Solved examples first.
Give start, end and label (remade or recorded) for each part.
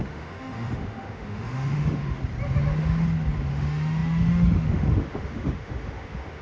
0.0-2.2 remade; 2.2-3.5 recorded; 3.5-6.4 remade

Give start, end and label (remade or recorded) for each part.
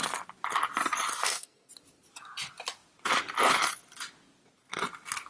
0.0-1.1 recorded; 1.1-1.7 remade; 1.7-5.3 recorded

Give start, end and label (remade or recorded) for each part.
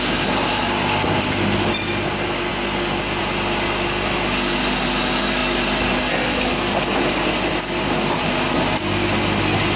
0.0-9.8 recorded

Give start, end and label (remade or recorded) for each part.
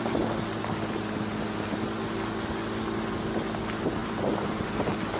0.0-4.0 recorded; 4.0-4.6 remade; 4.6-5.2 recorded